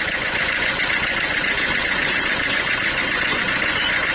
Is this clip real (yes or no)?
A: no